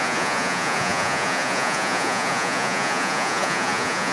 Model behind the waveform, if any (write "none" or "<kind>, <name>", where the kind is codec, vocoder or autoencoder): vocoder, Vocos